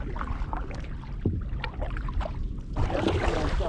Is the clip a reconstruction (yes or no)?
no